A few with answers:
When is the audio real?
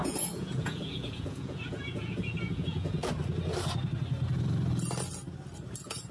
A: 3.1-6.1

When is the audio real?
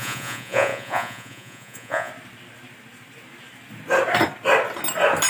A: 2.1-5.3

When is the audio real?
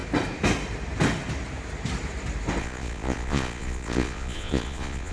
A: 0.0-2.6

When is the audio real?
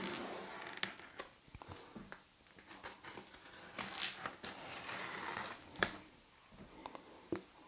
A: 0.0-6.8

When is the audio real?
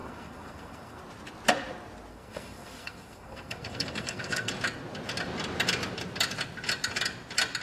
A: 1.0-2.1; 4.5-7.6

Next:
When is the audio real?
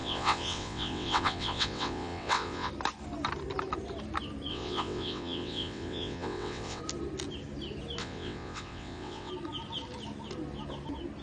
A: 2.7-4.5; 6.8-8.0; 9.3-11.2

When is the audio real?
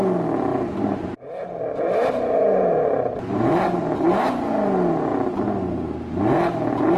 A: 0.0-0.5; 4.3-7.0